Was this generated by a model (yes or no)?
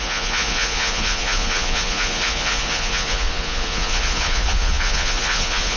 yes